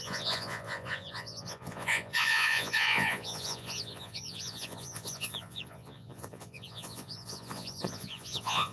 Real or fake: fake